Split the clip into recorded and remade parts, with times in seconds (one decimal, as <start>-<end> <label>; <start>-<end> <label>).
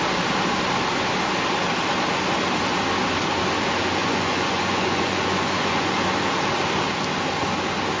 0.0-4.0 recorded; 4.0-5.9 remade; 5.9-8.0 recorded